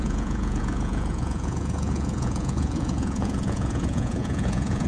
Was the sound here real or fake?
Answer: fake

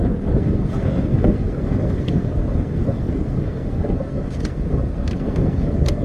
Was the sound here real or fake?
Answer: fake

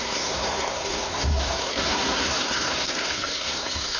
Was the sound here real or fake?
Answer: fake